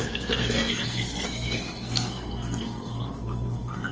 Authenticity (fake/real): fake